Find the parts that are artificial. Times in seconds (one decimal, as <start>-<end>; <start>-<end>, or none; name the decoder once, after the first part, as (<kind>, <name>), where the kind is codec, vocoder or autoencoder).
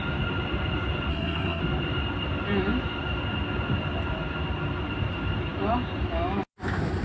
1.1-1.6 (codec, SNAC)